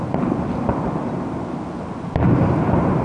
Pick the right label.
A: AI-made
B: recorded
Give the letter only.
B